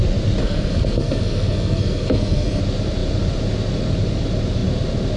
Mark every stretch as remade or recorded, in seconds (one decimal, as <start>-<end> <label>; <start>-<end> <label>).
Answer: 0.0-0.4 recorded; 0.4-2.6 remade; 2.6-5.2 recorded